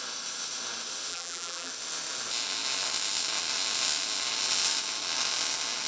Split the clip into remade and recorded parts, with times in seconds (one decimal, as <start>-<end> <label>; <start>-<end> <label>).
0.0-1.1 recorded; 1.1-1.7 remade; 1.7-5.9 recorded